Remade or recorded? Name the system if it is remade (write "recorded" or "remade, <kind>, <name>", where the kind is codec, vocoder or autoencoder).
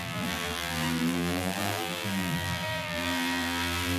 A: remade, vocoder, BigVGAN v2